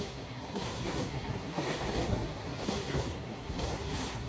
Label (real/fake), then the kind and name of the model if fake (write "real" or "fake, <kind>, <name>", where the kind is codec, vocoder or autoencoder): fake, codec, SNAC